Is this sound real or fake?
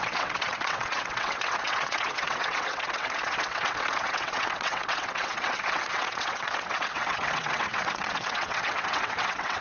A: fake